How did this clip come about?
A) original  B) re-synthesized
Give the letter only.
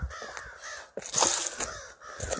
A